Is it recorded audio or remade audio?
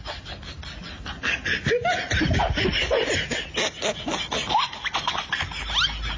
recorded